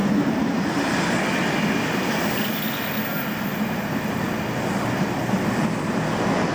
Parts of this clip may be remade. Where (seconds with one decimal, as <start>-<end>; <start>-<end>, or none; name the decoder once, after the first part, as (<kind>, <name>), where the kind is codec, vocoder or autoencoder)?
0.0-0.7 (vocoder, BigVGAN v2)

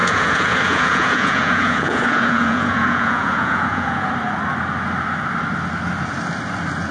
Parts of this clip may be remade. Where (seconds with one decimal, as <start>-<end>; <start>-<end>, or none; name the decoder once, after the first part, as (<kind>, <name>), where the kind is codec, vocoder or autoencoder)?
0.0-4.1 (vocoder, Vocos)

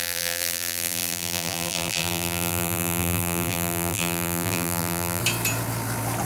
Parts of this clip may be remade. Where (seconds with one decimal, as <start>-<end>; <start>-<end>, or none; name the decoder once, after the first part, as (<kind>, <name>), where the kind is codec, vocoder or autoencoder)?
0.0-5.2 (vocoder, BigVGAN v2)

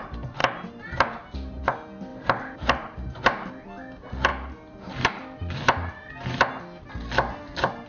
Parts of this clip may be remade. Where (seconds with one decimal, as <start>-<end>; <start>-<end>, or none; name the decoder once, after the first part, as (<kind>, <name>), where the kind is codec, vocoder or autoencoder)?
0.4-1.6 (vocoder, BigVGAN v2); 2.1-3.5; 4.3-5.1

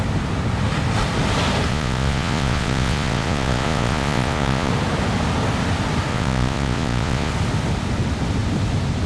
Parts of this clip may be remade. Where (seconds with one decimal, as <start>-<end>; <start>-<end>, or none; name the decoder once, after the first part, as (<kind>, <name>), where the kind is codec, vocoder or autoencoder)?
1.7-4.7 (vocoder, Vocos); 6.1-7.3